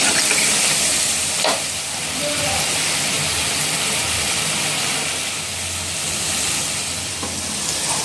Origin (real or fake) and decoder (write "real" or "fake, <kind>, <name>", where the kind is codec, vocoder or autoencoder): real